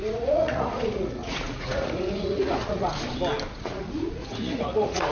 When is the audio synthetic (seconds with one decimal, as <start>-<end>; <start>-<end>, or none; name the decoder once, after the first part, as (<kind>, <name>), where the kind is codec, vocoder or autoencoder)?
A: 0.0-2.9 (vocoder, Vocos); 3.5-5.1